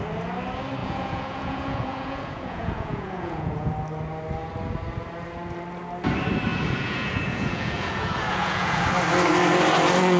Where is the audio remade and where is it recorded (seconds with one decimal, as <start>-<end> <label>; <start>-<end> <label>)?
0.0-0.8 recorded; 0.8-3.7 remade; 3.7-6.5 recorded; 6.5-8.9 remade; 8.9-10.2 recorded